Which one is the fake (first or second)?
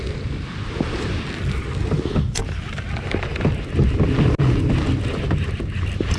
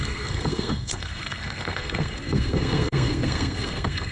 second